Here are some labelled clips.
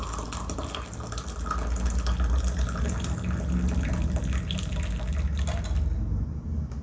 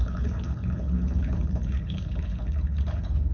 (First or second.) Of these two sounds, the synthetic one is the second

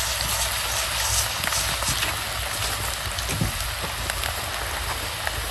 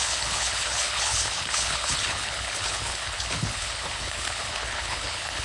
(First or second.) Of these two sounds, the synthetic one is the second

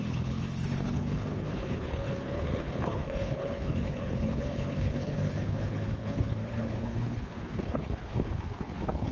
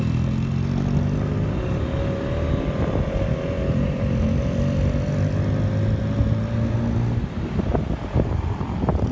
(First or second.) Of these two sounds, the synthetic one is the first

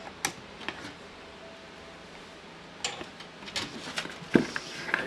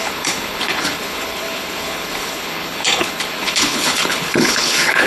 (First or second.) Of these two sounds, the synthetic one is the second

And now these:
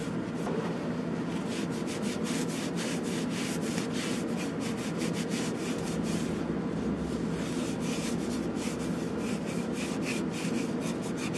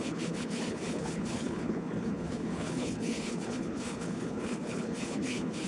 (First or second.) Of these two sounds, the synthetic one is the second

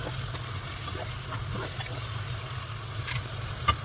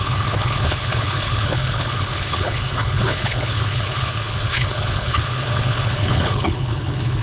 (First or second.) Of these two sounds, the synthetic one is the second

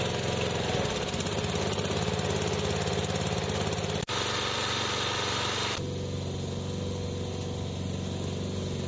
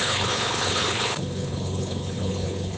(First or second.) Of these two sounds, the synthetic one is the second